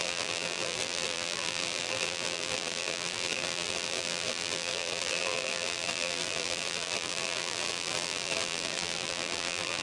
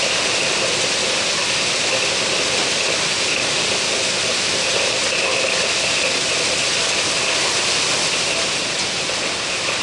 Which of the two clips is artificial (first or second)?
first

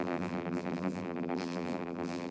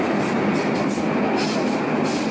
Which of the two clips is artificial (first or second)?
first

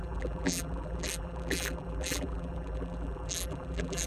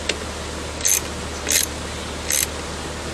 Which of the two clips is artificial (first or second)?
first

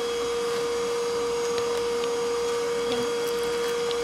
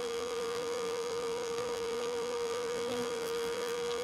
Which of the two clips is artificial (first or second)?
second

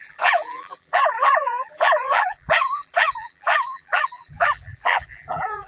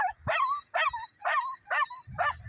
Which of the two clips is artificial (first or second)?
first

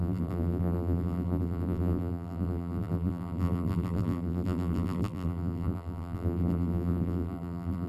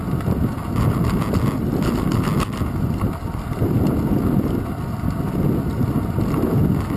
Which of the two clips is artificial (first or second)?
first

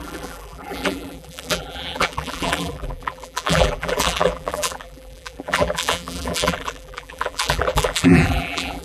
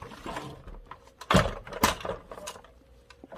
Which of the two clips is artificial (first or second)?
first